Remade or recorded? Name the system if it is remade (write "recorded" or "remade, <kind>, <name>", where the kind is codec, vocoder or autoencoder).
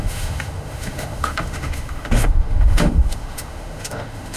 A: remade, autoencoder, DAC-VAE